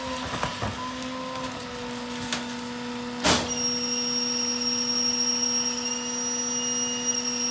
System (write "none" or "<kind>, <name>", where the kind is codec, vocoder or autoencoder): none